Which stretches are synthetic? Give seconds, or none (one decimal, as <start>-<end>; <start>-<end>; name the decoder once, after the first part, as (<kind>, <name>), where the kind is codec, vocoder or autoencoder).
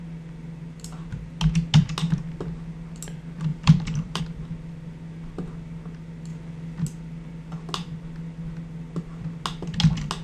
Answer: 3.5-4.2 (vocoder, BigVGAN v2)